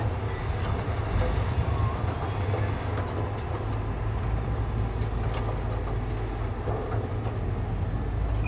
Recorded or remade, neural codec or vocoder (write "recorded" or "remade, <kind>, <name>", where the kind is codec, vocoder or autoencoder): recorded